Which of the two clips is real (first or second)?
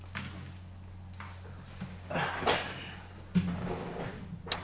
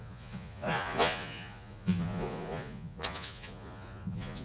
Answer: first